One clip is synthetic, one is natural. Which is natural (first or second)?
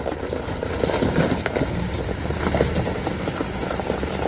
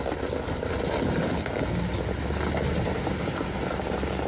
second